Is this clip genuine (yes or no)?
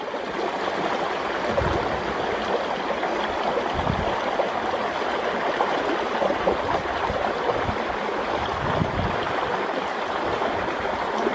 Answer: yes